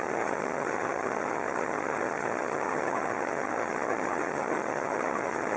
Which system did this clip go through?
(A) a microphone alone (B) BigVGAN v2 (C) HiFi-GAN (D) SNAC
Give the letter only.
C